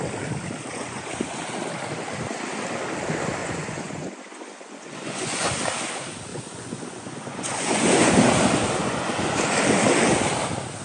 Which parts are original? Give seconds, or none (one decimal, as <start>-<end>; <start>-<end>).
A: 0.0-0.7; 1.4-3.4; 5.5-6.3; 8.1-8.8; 9.4-10.8